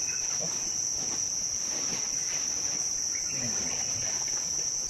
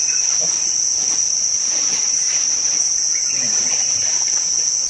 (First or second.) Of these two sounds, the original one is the first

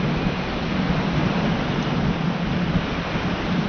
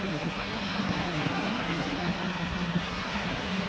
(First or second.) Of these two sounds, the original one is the first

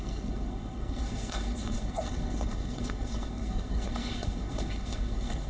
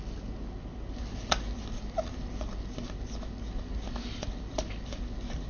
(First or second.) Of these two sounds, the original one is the second